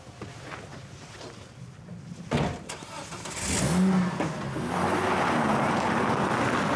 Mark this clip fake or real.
real